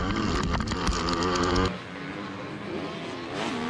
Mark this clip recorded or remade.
recorded